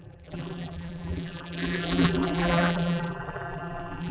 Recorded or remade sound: remade